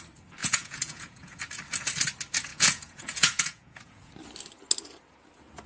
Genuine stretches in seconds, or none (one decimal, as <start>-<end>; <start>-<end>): 0.0-0.4; 1.4-2.5; 4.1-5.7